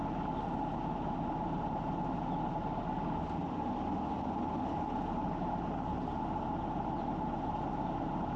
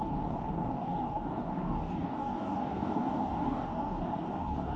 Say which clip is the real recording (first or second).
first